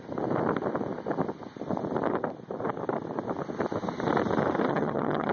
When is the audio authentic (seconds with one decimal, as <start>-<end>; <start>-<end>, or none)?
0.0-4.7